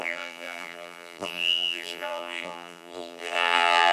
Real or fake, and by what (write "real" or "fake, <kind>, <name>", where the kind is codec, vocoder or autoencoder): fake, vocoder, BigVGAN v2